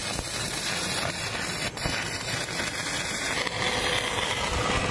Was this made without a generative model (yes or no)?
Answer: yes